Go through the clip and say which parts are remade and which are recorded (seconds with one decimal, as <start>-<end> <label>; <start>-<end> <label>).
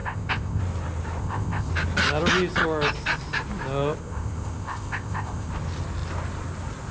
0.0-0.6 remade; 0.6-1.2 recorded; 1.2-1.7 remade; 1.7-4.0 recorded; 4.0-5.5 remade; 5.5-6.9 recorded